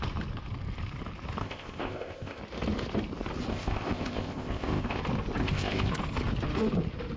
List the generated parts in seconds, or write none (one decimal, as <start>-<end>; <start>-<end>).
1.4-2.4; 3.5-5.0; 5.4-5.9